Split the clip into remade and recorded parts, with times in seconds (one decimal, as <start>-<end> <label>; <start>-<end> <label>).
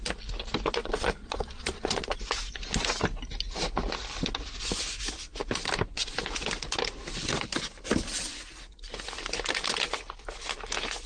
0.0-0.8 recorded; 0.8-2.2 remade; 2.2-11.1 recorded